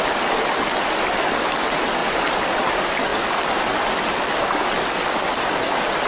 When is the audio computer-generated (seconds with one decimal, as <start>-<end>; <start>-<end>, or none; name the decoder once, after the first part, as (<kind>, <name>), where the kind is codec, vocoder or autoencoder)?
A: none

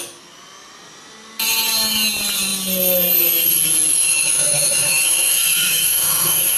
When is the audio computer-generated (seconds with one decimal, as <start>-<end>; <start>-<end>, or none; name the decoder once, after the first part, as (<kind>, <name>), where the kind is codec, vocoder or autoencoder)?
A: 3.9-6.6 (autoencoder, DAC-VAE)

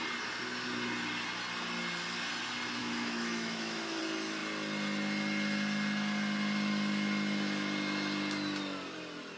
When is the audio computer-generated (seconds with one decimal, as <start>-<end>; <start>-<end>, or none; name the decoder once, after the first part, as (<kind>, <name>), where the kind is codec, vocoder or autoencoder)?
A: 2.8-4.0 (autoencoder, DAC-VAE)

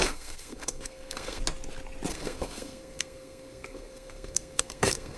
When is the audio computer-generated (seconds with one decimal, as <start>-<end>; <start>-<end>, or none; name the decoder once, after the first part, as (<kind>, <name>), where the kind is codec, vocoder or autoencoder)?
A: 0.0-1.4 (codec, SNAC); 2.1-5.2

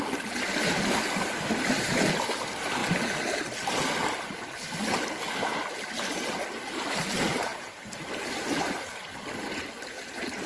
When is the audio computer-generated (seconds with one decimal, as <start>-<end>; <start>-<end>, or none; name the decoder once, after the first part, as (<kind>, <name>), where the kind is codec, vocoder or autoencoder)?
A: none

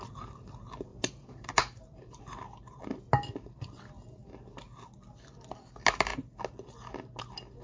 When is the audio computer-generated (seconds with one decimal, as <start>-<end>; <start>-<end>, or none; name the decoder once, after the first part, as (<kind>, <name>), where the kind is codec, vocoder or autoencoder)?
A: 0.9-2.8 (vocoder, BigVGAN v2)

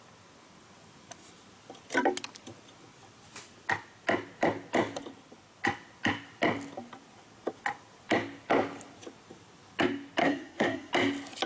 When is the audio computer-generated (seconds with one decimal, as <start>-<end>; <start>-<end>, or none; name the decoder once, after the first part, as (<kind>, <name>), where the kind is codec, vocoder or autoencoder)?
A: 10.2-10.9 (codec, SNAC)

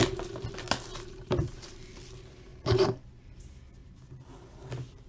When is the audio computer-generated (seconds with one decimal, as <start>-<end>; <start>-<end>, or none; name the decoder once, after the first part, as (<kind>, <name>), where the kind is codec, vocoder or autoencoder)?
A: 0.9-1.9 (vocoder, BigVGAN v2); 2.5-3.1; 3.8-4.3